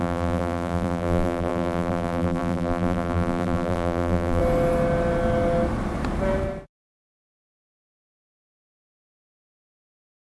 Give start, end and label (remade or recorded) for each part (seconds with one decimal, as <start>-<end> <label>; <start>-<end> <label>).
0.0-4.4 remade; 4.4-7.6 recorded; 7.6-10.3 remade